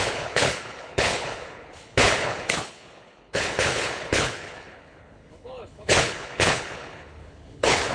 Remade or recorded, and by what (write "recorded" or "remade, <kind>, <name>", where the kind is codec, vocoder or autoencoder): remade, codec, HILCodec